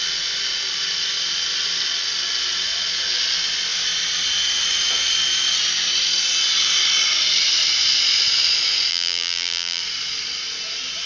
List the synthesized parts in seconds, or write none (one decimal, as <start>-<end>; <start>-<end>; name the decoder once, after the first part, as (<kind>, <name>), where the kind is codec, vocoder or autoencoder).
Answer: 8.9-9.8 (vocoder, BigVGAN v2)